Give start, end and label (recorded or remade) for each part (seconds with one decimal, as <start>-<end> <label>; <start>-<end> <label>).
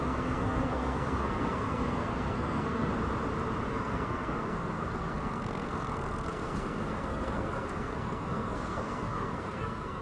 0.0-2.9 remade; 2.9-3.7 recorded; 3.7-10.0 remade